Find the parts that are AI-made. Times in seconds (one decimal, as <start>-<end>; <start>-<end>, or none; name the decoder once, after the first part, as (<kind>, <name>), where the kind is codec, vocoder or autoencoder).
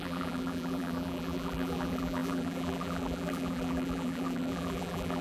0.0-5.2 (vocoder, BigVGAN v2)